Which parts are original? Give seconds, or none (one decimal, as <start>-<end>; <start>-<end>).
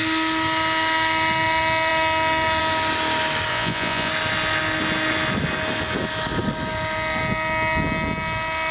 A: 0.0-3.5; 4.1-8.7